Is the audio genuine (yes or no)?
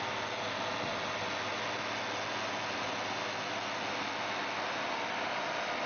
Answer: yes